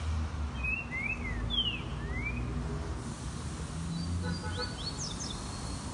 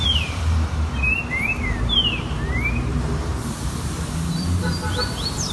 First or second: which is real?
first